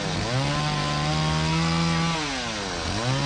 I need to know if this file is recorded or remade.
recorded